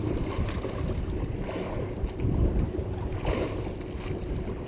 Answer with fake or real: real